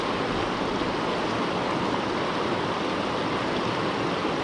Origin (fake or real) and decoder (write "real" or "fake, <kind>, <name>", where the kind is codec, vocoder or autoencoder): real